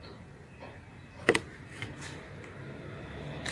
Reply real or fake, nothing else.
real